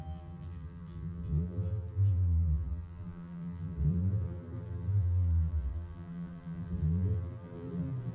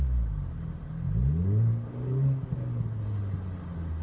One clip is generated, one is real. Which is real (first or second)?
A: second